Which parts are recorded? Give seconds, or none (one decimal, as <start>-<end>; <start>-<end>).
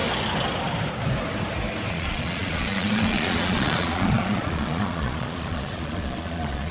0.0-1.9